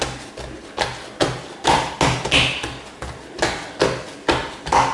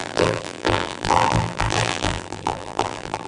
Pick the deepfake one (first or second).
second